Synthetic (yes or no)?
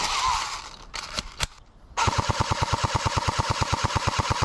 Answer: no